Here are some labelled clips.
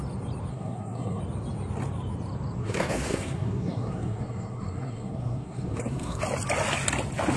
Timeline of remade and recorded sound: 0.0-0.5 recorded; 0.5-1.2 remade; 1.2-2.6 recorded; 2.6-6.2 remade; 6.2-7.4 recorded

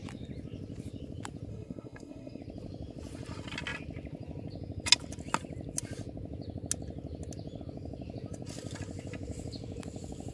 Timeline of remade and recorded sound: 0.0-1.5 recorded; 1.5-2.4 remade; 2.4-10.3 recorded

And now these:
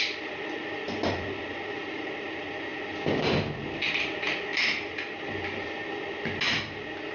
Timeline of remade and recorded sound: 0.0-7.1 recorded

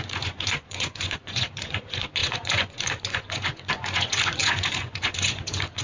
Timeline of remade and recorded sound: 0.0-5.8 remade

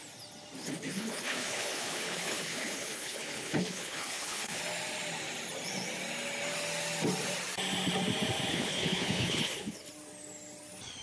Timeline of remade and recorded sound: 0.0-0.6 recorded; 0.6-4.6 remade; 4.6-8.5 recorded; 8.5-9.9 remade; 9.9-11.0 recorded

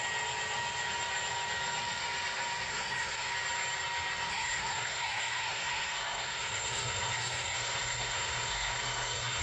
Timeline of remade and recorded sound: 0.0-2.7 recorded; 2.7-3.3 remade; 3.3-4.3 recorded; 4.3-9.4 remade

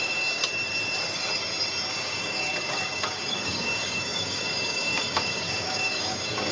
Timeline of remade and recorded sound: 0.0-0.4 remade; 0.4-1.9 recorded; 1.9-6.5 remade